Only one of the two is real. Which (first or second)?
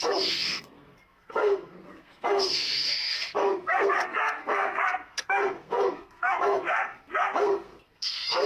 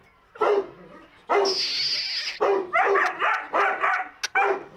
second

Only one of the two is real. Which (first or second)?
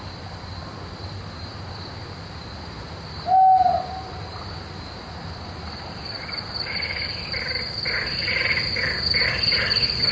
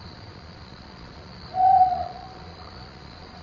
first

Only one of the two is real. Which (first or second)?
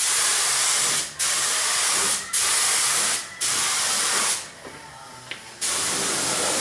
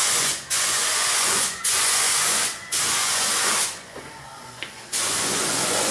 first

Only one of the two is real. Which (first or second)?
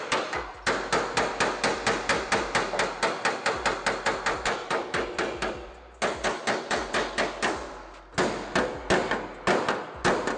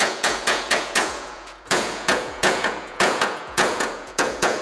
first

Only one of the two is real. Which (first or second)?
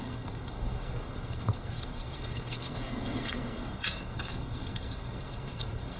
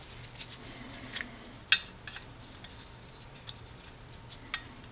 second